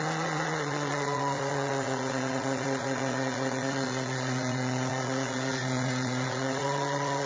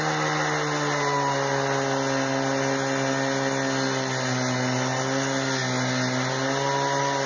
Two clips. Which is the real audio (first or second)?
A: second